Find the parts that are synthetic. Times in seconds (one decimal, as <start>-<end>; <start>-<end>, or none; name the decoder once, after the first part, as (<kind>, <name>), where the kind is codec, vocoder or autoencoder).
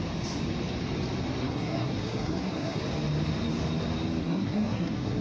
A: 1.4-2.8 (codec, SNAC); 4.2-5.2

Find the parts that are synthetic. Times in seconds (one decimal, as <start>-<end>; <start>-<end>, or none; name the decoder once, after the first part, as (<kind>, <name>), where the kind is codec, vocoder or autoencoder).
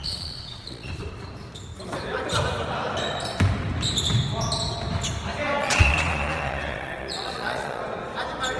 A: 0.0-0.9 (vocoder, Vocos); 5.6-7.8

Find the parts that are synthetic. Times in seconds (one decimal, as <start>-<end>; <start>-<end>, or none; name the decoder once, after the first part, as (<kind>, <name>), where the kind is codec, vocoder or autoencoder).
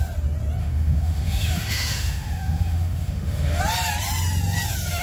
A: 0.6-3.6 (autoencoder, DAC-VAE)